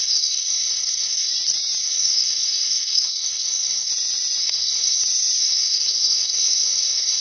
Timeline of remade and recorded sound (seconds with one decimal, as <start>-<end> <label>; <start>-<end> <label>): 0.0-1.3 remade; 1.3-1.8 recorded; 1.8-3.9 remade; 3.9-4.4 recorded; 4.4-5.0 remade; 5.0-5.4 recorded; 5.4-7.2 remade